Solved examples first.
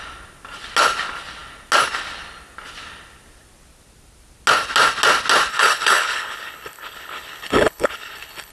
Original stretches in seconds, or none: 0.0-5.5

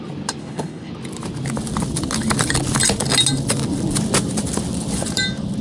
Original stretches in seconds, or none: 0.0-0.4; 0.9-5.6

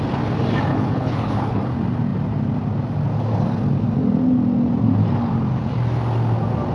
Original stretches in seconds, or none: 0.0-0.7; 1.6-6.7

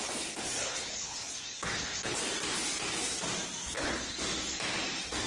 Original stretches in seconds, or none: 0.0-0.7; 2.2-3.6; 4.2-5.3

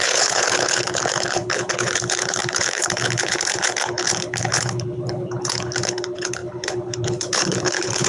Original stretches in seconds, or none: none

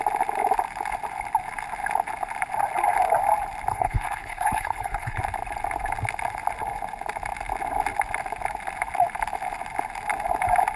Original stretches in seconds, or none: 0.0-3.7; 5.2-10.8

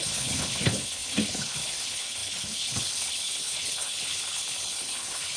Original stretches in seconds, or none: none